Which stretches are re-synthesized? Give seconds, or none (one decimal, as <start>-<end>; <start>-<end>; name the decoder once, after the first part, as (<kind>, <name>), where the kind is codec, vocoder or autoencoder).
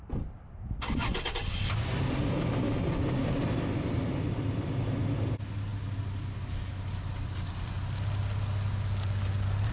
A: none